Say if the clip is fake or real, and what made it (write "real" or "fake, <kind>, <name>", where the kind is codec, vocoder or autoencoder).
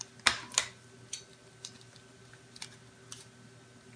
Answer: real